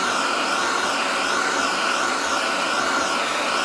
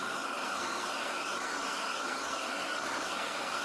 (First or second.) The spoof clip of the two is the second